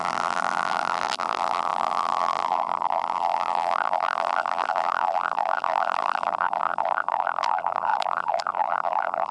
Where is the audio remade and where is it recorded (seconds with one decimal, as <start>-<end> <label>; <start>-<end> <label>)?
0.0-9.3 remade